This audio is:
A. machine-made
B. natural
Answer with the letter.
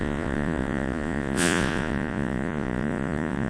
A